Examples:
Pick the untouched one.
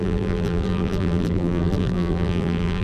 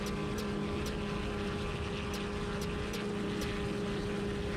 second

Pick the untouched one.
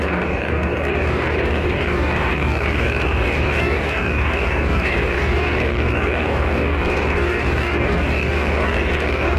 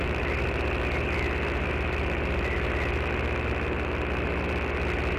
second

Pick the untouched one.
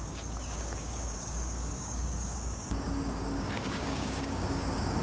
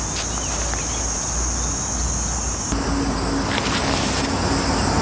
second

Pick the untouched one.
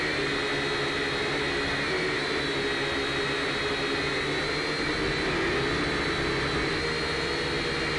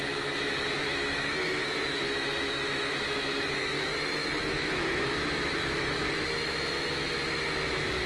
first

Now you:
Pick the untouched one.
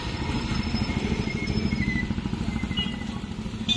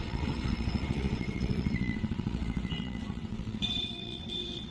first